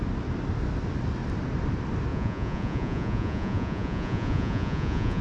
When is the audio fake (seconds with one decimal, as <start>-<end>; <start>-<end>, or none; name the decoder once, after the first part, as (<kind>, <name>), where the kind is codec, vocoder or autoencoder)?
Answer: 2.1-5.2 (vocoder, Vocos)